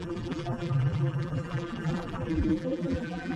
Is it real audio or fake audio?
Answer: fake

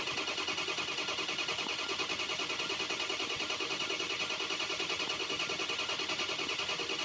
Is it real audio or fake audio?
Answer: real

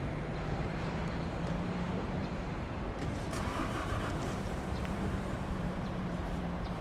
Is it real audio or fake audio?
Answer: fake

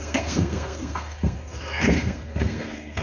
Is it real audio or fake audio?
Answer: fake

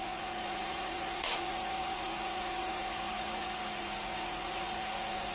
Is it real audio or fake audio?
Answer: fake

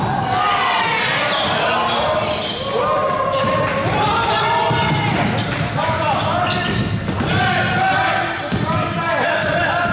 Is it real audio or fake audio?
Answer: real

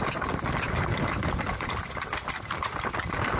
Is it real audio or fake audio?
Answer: real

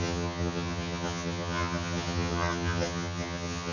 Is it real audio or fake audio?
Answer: fake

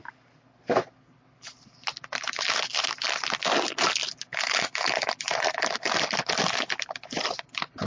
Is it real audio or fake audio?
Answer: real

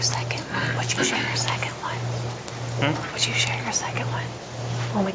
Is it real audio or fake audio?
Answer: real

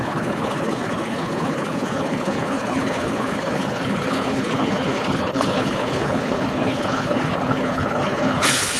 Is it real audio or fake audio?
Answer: fake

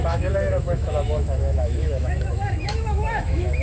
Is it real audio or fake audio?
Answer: fake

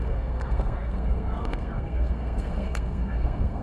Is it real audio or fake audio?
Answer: fake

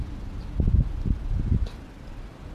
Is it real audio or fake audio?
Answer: real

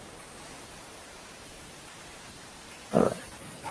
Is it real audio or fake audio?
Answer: fake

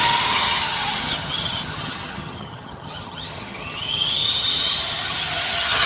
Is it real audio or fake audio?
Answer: fake